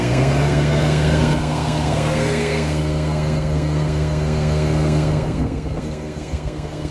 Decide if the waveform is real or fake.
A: fake